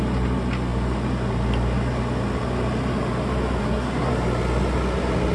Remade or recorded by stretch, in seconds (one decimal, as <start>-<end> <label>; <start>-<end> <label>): 0.0-3.6 recorded; 3.6-4.1 remade; 4.1-5.3 recorded